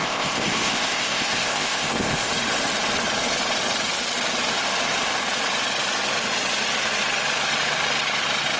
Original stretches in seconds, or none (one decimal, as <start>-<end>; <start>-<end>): 2.3-8.6